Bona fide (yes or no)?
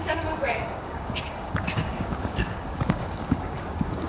no